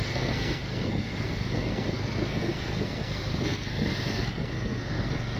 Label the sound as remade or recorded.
remade